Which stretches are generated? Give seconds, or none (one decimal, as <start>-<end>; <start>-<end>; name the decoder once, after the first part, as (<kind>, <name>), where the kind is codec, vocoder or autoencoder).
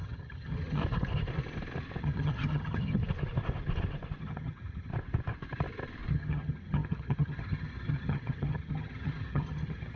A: 0.0-0.8 (vocoder, HiFi-GAN); 2.0-3.0; 4.2-4.9; 6.1-10.0